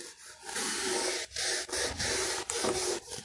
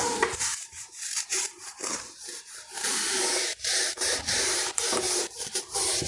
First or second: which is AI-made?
second